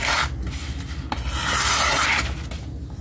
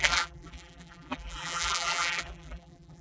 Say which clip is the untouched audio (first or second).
first